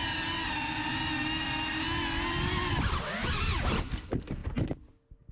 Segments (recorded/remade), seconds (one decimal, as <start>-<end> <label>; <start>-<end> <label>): 0.0-5.3 recorded